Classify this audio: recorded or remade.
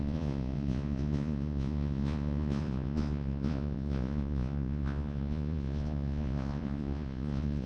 remade